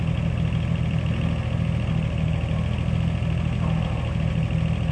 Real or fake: real